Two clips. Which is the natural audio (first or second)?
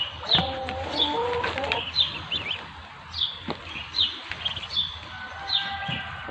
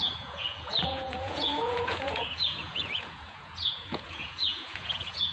first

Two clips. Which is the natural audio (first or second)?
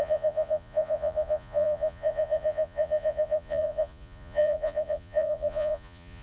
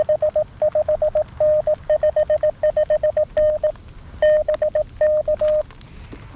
second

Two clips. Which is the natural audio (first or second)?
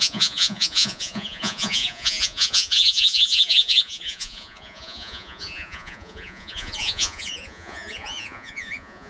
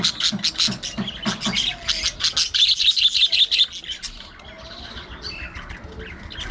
second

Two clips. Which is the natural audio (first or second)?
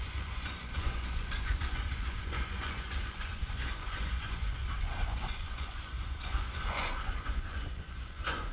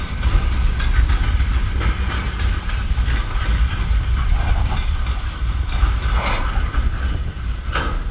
second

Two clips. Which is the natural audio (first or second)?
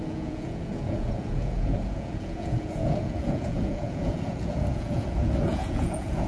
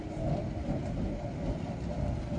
second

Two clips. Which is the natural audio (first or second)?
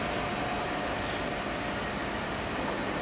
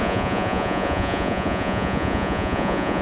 first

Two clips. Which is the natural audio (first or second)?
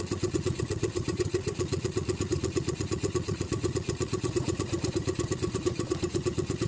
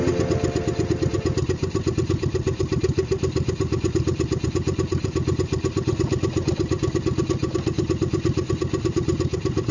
second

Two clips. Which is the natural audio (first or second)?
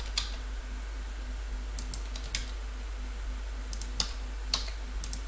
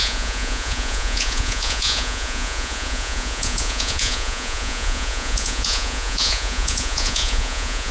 first